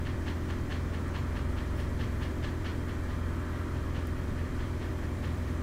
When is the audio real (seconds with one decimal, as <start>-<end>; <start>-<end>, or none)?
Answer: 0.7-1.2

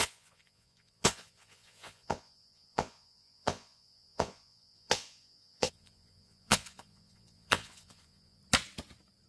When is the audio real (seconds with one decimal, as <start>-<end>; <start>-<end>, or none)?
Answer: 8.4-9.3